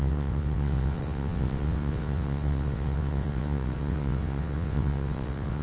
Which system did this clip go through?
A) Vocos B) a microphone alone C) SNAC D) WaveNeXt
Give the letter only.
D